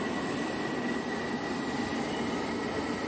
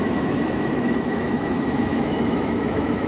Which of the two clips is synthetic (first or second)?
second